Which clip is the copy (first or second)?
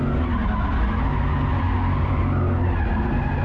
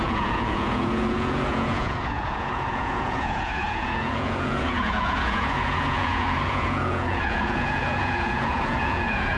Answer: second